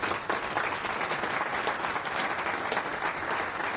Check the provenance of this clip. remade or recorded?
recorded